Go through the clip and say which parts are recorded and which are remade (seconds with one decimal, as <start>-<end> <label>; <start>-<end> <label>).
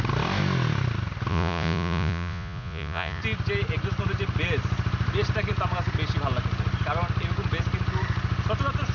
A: 0.0-1.3 recorded; 1.3-3.2 remade; 3.2-8.9 recorded